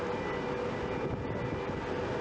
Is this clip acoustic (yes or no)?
yes